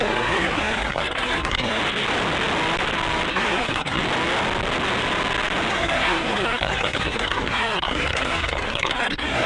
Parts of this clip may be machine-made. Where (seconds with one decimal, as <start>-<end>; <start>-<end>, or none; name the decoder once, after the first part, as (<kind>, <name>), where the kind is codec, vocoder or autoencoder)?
0.0-1.8 (codec, SNAC); 3.3-4.0; 5.7-9.5